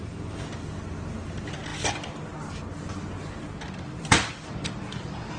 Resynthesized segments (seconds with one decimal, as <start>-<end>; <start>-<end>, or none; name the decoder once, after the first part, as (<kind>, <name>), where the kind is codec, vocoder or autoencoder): none